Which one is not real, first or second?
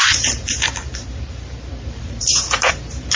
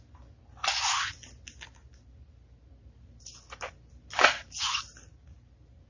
first